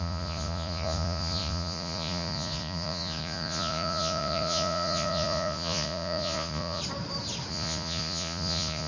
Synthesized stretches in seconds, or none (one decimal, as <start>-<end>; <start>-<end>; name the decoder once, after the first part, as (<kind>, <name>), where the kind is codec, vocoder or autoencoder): 0.0-6.8 (vocoder, Vocos); 7.5-8.9